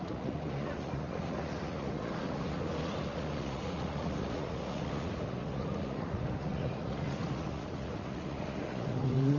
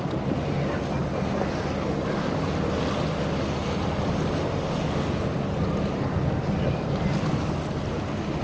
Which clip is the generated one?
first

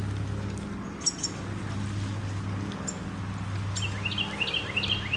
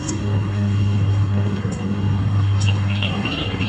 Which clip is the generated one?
second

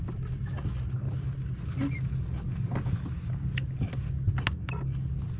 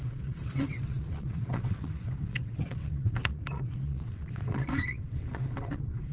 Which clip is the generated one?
second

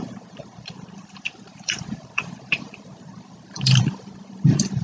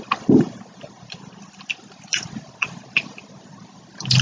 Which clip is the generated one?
first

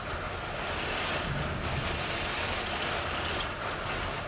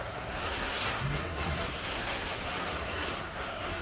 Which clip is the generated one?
second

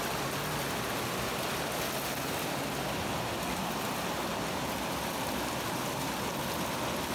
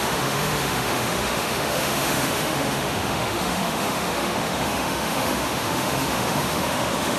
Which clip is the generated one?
second